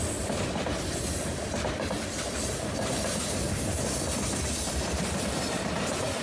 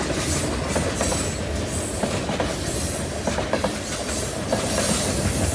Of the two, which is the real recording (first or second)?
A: second